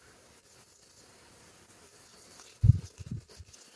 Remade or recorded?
recorded